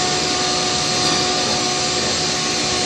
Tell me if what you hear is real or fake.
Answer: real